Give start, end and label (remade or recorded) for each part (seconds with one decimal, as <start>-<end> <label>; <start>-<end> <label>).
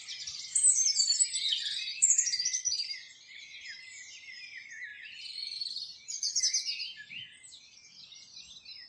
0.0-7.9 remade; 7.9-8.9 recorded